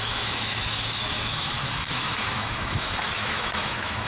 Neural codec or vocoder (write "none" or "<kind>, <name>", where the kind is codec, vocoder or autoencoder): autoencoder, DAC-VAE